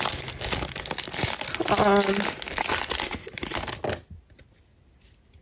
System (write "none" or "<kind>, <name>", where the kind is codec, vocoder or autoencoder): none